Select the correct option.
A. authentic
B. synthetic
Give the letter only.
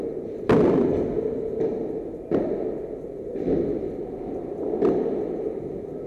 A